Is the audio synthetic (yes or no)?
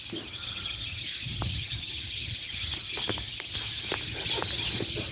no